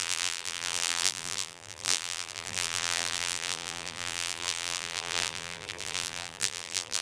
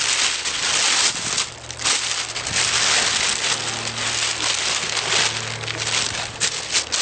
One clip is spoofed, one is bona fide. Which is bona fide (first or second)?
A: second